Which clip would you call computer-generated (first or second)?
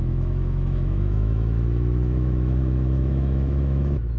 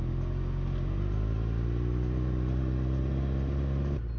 first